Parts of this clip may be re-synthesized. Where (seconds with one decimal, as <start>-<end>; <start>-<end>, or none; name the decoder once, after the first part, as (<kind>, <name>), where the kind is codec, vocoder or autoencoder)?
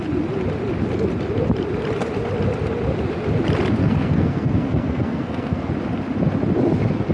3.8-5.7 (codec, SNAC)